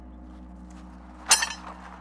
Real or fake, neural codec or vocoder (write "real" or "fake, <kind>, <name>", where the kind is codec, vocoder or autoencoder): real